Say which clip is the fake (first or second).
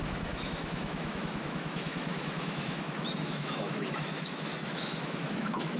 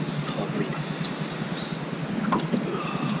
first